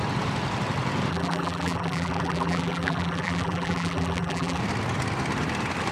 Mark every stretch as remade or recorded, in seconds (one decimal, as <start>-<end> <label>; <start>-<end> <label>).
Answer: 0.0-1.1 recorded; 1.1-4.6 remade; 4.6-5.9 recorded

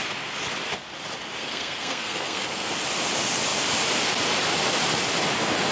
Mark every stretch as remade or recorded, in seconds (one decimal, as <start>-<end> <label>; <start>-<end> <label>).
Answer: 0.0-1.4 recorded; 1.4-2.7 remade; 2.7-5.7 recorded